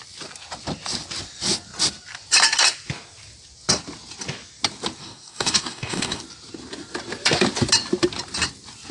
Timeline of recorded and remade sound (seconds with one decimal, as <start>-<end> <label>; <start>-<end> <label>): 0.0-5.0 recorded; 5.0-6.2 remade; 6.2-8.9 recorded

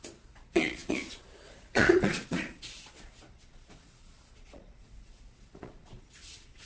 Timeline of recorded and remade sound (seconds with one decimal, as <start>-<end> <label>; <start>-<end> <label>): 0.0-6.7 remade

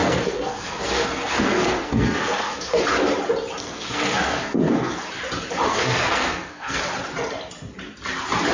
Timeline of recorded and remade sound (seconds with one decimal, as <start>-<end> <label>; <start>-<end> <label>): 0.0-2.8 remade; 2.8-3.6 recorded; 3.6-5.0 remade; 5.0-5.7 recorded; 5.7-6.8 remade; 6.8-8.5 recorded

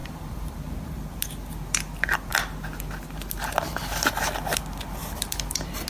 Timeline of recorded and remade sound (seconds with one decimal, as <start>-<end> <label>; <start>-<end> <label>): 0.0-0.5 remade; 0.5-5.0 recorded; 5.0-5.9 remade

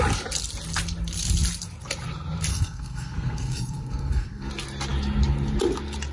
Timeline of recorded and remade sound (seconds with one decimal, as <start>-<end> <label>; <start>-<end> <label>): 0.0-2.5 recorded; 2.5-4.5 remade; 4.5-6.1 recorded

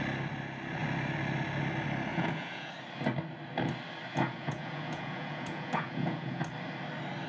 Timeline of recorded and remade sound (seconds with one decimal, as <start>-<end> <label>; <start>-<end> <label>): 0.0-2.1 recorded; 2.1-2.7 remade; 2.7-4.1 recorded; 4.1-6.4 remade; 6.4-7.3 recorded